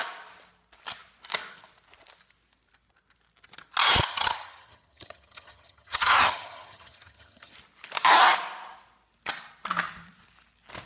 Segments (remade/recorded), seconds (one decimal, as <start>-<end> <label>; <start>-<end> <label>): 0.0-4.1 recorded; 4.1-7.5 remade; 7.5-10.9 recorded